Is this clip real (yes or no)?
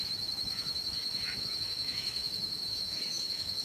no